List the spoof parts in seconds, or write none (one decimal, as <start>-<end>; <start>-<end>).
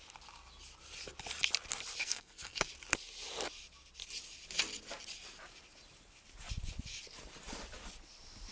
2.0-2.7